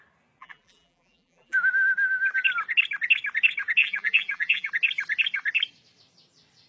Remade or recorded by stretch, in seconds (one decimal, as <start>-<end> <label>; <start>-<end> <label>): 0.0-0.4 recorded; 0.4-1.7 remade; 1.7-3.8 recorded; 3.8-4.7 remade; 4.7-6.7 recorded